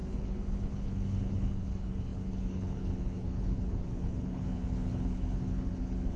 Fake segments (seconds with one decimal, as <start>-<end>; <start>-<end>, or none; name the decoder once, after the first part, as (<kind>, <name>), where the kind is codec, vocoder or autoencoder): 0.0-6.2 (codec, HILCodec)

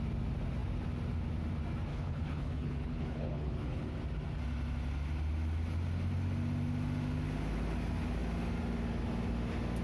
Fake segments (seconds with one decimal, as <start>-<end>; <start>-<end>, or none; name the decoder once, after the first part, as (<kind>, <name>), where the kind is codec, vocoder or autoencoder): 1.9-3.9 (codec, HILCodec)